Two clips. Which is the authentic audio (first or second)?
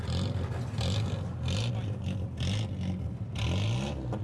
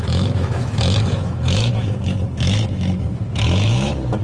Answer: first